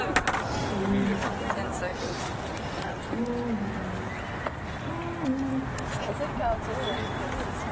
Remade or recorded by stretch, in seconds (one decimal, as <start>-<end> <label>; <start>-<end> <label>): 0.0-7.7 recorded